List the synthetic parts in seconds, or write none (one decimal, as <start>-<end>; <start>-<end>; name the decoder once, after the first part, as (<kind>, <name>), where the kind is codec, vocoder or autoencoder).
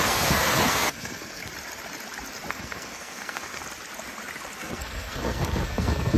0.0-1.4 (codec, SNAC); 2.5-3.6; 4.6-6.2